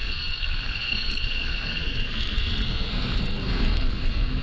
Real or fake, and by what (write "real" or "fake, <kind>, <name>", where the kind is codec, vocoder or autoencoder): fake, codec, SNAC